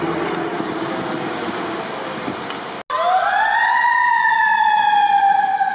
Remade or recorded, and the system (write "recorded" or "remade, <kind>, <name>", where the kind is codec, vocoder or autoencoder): recorded